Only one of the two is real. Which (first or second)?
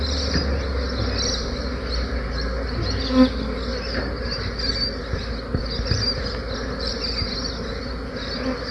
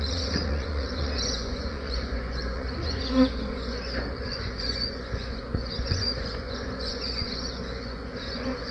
first